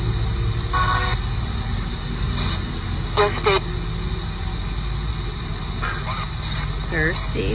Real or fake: real